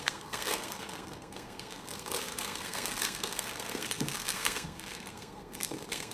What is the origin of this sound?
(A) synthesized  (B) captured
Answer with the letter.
A